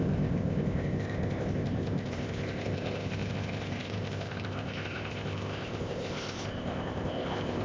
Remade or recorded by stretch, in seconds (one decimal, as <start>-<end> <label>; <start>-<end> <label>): 0.0-7.6 remade